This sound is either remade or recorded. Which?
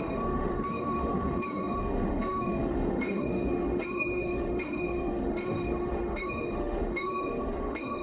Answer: remade